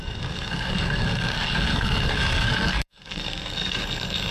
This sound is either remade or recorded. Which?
remade